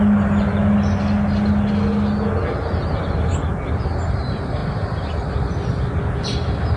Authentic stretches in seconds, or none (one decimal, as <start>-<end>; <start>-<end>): 0.0-6.8